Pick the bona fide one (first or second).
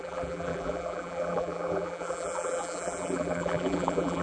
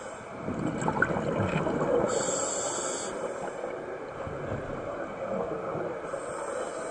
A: second